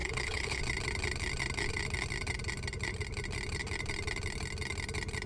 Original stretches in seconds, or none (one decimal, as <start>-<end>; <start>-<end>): 0.6-5.3